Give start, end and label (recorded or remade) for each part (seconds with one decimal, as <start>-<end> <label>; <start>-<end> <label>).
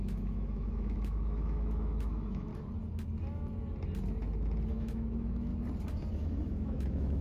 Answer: 0.0-2.5 remade; 2.5-4.7 recorded; 4.7-5.5 remade; 5.5-6.1 recorded; 6.1-7.2 remade